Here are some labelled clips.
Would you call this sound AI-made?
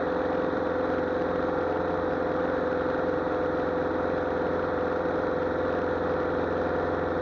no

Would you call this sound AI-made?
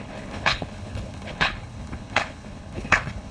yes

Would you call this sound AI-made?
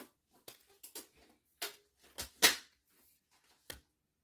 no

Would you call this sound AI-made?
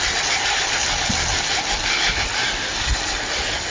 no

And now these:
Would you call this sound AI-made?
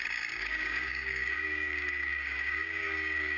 yes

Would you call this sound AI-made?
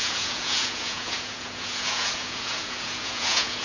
yes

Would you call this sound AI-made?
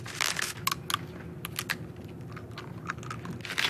no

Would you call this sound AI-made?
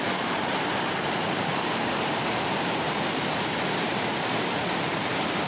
yes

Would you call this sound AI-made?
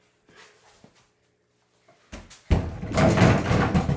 no